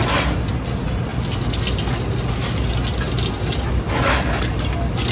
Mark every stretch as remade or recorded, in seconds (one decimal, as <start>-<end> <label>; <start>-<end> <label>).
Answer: 0.0-5.1 recorded

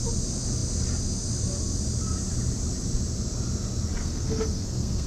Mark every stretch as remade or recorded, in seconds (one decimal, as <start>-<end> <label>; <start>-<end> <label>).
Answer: 0.0-4.0 recorded; 4.0-5.1 remade

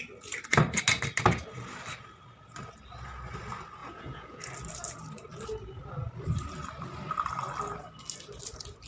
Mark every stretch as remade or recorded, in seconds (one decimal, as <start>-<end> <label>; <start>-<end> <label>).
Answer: 0.0-3.8 recorded; 3.8-4.4 remade; 4.4-8.9 recorded

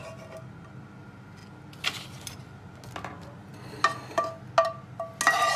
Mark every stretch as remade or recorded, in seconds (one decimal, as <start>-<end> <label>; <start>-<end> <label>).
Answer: 0.0-5.6 recorded

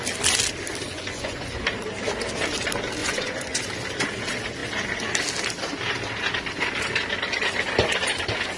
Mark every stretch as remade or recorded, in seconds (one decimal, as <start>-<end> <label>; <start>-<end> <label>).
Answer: 0.0-0.9 recorded; 0.9-1.5 remade; 1.5-3.0 recorded; 3.0-3.6 remade; 3.6-8.6 recorded